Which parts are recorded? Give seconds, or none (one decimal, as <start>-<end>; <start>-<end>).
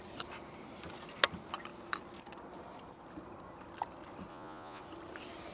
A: 0.0-4.3; 4.8-5.5